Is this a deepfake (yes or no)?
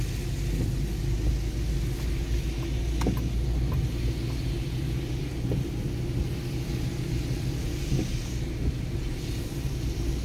no